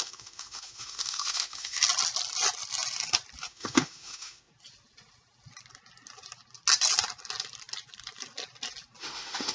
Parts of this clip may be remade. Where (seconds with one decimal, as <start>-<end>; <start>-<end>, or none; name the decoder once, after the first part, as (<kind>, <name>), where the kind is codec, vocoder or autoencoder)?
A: 0.0-1.8 (autoencoder, DAC-VAE); 3.5-4.5; 9.0-9.5